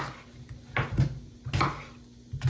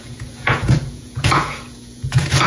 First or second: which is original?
first